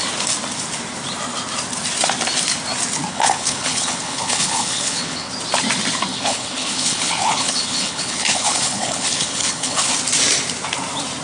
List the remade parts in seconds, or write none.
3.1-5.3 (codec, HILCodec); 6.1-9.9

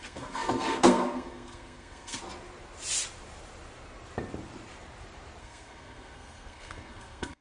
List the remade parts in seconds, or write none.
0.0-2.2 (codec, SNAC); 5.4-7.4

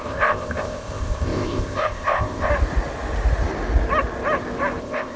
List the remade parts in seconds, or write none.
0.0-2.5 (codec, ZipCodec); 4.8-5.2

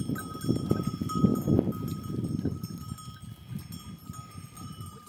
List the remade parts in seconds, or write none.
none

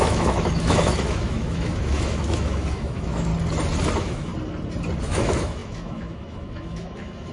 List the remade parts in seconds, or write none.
0.0-3.3 (autoencoder, DAC-VAE); 3.9-4.3; 5.0-7.3

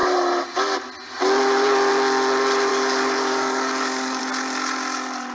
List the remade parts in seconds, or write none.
2.7-4.2 (codec, DAC)